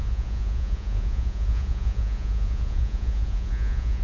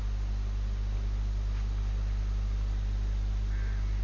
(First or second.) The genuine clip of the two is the second